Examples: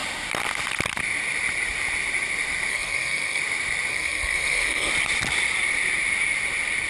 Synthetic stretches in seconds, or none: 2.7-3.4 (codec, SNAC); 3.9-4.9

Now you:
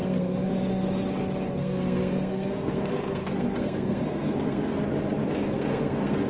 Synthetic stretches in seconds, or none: 0.0-0.5 (codec, SNAC); 1.6-4.8; 5.2-6.3

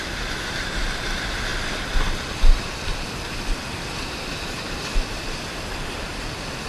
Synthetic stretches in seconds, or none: 0.0-1.5 (vocoder, BigVGAN v2); 2.0-6.7

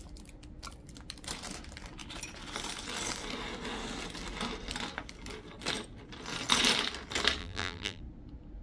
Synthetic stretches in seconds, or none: 7.4-8.0 (vocoder, BigVGAN v2)

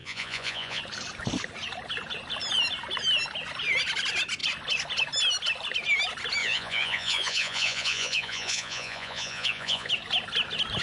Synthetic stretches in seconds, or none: 0.0-0.8 (vocoder, Vocos); 6.4-9.9

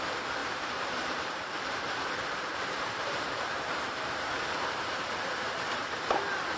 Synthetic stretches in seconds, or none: 0.4-4.3 (vocoder, BigVGAN v2)

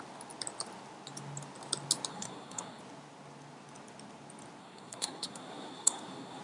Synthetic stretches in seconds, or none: 2.1-2.8 (codec, SNAC); 4.6-6.4